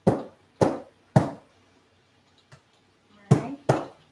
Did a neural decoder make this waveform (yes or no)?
no